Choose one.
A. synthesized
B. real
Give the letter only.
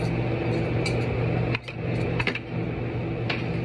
B